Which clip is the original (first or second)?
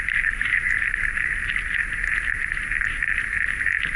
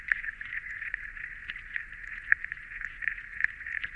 first